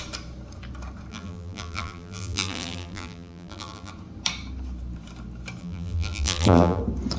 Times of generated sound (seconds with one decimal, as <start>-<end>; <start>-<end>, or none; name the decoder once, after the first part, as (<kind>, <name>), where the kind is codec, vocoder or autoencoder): 1.1-3.9 (vocoder, BigVGAN v2); 5.6-6.8